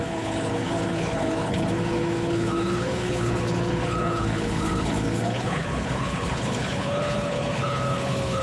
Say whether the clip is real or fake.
fake